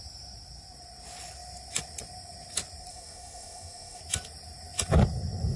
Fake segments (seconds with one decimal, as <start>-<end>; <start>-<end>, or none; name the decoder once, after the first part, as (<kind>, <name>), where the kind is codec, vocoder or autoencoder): 2.9-4.0 (autoencoder, DAC-VAE)